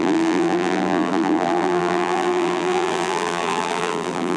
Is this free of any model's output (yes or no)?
no